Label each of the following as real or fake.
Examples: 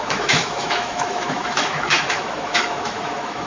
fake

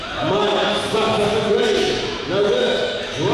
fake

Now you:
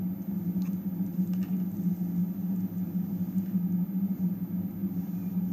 real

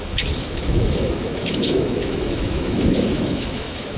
fake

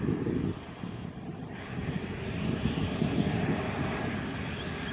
real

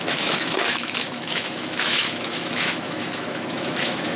fake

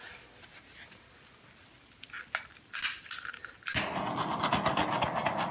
real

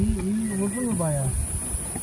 real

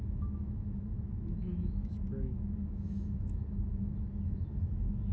fake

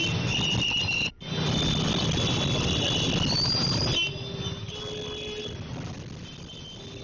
real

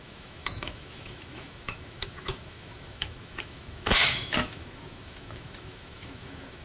fake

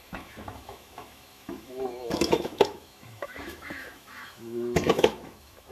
fake